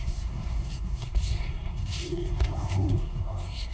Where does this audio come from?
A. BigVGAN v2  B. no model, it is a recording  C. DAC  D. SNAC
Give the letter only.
D